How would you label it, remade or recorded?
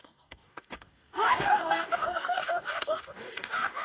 remade